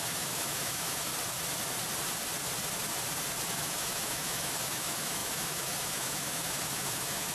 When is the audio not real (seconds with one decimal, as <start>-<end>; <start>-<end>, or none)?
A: 0.0-1.1; 3.5-7.3